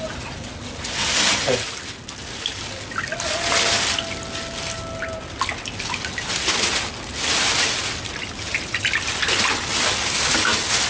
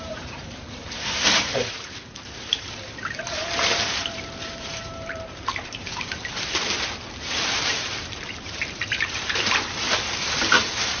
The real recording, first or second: first